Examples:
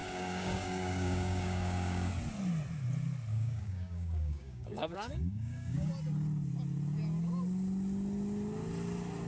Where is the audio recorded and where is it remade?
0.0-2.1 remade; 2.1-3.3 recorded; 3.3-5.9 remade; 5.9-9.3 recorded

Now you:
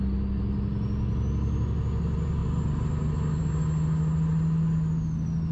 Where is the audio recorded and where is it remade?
0.0-5.5 recorded